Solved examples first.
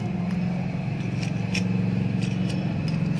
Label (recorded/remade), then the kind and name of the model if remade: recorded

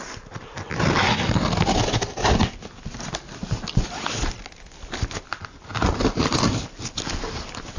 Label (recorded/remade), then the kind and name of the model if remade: recorded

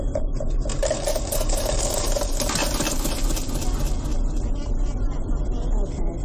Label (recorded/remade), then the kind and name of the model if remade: recorded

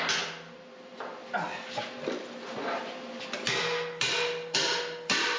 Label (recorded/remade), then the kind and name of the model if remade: recorded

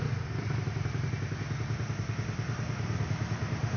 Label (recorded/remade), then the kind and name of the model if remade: recorded